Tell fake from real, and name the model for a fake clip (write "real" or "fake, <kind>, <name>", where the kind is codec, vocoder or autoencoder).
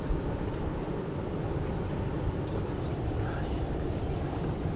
fake, vocoder, BigVGAN v2